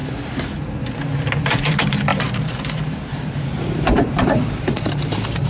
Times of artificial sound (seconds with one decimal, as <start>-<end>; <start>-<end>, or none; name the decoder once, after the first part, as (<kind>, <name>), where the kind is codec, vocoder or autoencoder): 1.4-5.5 (vocoder, BigVGAN v2)